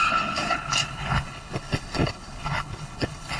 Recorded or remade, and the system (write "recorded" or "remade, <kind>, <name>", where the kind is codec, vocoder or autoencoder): remade, codec, HILCodec